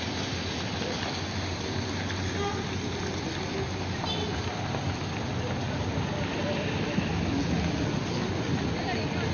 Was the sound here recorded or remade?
recorded